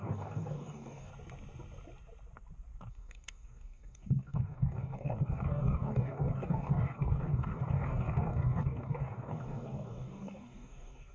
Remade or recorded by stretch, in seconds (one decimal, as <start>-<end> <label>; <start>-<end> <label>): 0.0-1.1 remade; 1.1-2.9 recorded; 2.9-11.1 remade